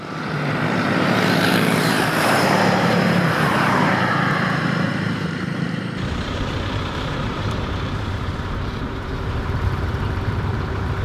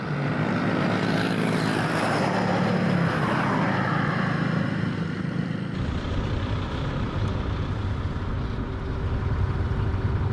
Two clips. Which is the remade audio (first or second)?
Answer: first